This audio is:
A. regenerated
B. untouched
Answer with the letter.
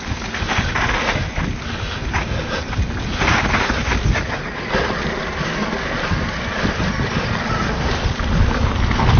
B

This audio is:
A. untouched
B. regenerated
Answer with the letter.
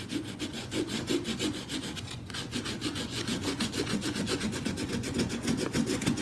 B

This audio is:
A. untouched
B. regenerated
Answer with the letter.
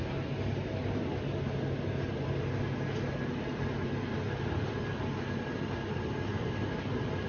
A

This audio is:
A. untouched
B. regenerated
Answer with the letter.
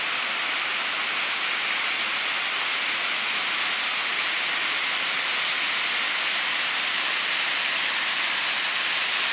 A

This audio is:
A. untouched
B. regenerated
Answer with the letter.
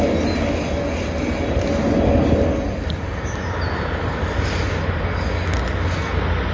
A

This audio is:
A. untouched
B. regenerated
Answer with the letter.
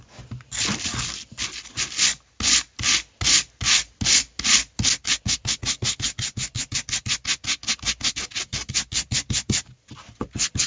A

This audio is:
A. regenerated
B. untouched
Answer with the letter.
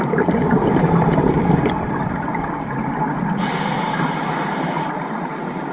B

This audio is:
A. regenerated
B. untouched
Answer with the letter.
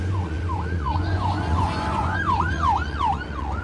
A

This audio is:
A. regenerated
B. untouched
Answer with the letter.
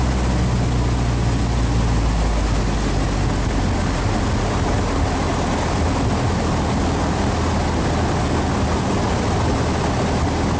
B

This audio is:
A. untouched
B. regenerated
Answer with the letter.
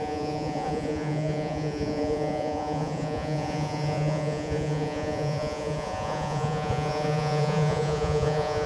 B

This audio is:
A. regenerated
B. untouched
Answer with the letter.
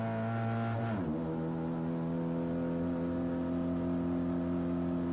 B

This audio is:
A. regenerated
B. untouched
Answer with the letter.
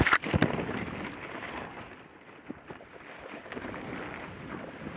B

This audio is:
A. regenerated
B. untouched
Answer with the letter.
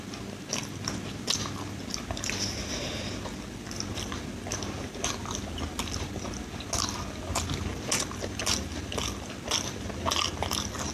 B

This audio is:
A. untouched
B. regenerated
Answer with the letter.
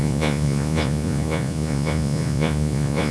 B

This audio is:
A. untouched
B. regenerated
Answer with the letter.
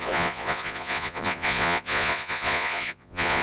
B